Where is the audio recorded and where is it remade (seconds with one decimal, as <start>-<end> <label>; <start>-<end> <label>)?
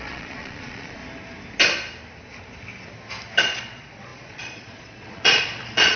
0.0-1.0 remade; 1.0-3.4 recorded; 3.4-6.0 remade